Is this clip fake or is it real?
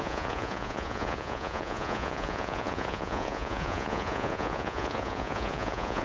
fake